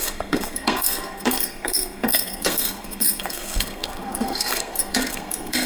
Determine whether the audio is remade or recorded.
remade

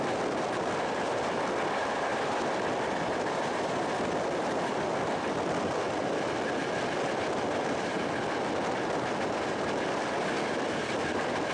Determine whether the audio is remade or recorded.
recorded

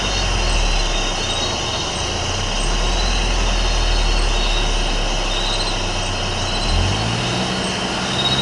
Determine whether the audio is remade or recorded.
recorded